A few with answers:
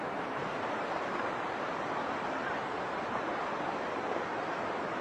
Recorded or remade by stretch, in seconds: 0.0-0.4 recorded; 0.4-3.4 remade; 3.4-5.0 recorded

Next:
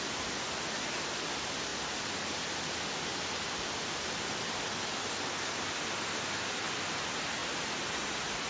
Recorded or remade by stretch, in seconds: 0.0-8.5 recorded

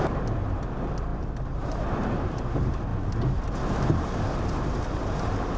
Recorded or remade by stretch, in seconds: 0.0-2.9 remade; 2.9-3.9 recorded; 3.9-5.6 remade

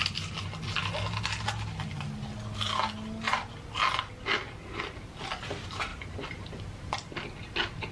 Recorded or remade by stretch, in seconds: 0.0-0.8 remade; 0.8-4.7 recorded; 4.7-5.9 remade; 5.9-6.6 recorded; 6.6-7.9 remade

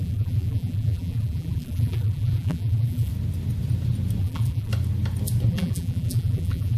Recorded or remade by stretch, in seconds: 0.0-3.1 remade; 3.1-4.2 recorded; 4.2-4.7 remade; 4.7-5.5 recorded; 5.5-6.8 remade